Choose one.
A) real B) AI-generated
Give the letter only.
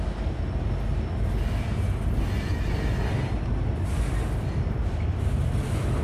A